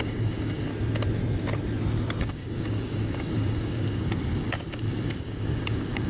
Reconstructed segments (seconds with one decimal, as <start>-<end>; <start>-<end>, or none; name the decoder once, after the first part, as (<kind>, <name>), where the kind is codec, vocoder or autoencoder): 0.0-0.7 (codec, DAC); 2.2-6.1